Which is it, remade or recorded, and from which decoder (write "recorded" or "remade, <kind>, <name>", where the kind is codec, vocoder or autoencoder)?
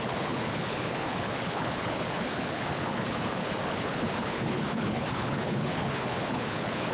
remade, codec, HILCodec